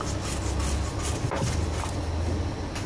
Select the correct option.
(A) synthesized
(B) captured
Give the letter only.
B